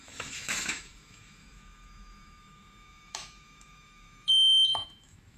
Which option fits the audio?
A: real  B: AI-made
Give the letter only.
B